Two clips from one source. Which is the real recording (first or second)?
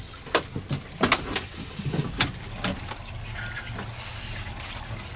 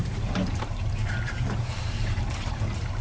first